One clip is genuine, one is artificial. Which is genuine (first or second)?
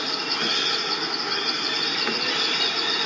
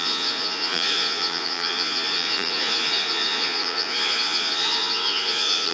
first